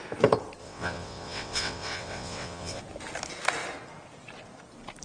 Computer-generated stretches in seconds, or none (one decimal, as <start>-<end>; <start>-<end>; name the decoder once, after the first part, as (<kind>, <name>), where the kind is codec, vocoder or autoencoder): 0.6-2.8 (vocoder, WaveNeXt)